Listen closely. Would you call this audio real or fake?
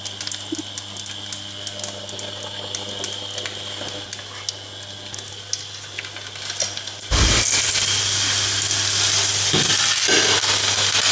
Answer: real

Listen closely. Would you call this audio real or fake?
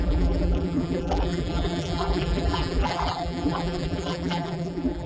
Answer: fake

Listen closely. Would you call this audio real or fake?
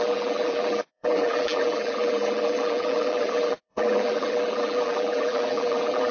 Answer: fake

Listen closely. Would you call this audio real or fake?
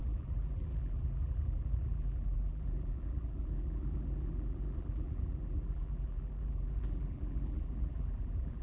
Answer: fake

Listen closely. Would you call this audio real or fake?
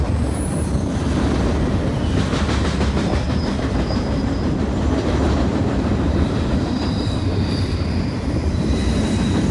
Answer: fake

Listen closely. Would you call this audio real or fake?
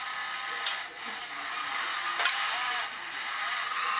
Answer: fake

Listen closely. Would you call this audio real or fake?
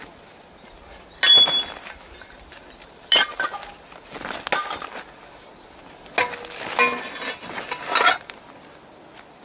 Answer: real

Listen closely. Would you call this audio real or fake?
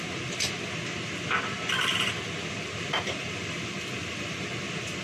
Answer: real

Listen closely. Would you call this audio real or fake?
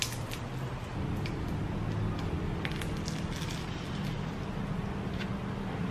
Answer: real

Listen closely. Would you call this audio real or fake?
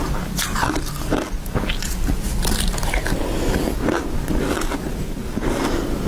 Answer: real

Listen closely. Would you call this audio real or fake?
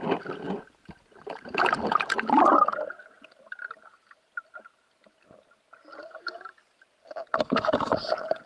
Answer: real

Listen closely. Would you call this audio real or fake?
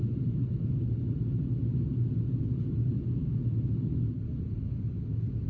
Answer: real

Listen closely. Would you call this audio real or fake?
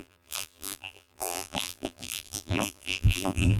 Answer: fake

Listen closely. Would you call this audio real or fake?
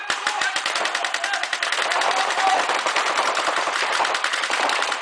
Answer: fake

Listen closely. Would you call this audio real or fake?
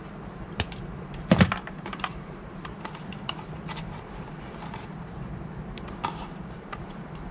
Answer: fake